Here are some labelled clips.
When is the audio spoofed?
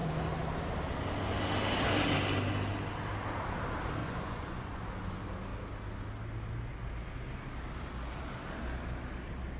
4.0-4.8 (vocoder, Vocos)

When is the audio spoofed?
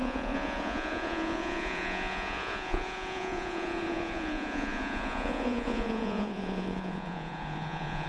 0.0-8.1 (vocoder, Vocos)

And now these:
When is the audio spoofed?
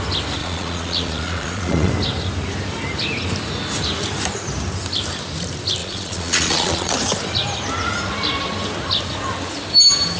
0.4-1.9 (vocoder, Vocos); 5.8-6.9